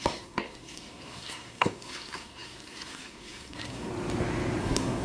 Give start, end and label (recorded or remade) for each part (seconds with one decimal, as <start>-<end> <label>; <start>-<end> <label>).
0.0-3.9 remade; 3.9-4.6 recorded; 4.6-5.0 remade